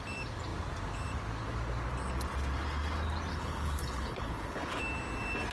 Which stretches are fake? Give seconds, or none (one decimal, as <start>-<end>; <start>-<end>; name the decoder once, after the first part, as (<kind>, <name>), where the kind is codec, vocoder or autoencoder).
3.3-4.8 (codec, HILCodec)